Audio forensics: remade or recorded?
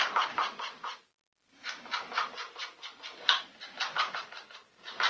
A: recorded